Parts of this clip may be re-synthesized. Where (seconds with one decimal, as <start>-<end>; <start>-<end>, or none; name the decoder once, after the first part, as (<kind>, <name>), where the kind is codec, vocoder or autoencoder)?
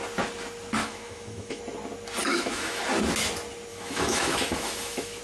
0.8-1.6 (autoencoder, DAC-VAE); 2.2-2.8; 3.7-5.2